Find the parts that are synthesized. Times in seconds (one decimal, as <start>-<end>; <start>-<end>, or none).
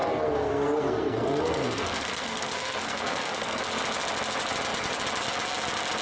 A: 0.0-3.6